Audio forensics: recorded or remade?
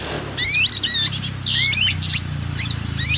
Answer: recorded